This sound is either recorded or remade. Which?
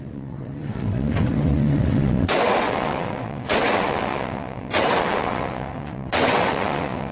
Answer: remade